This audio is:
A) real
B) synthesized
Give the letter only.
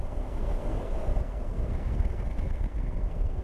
B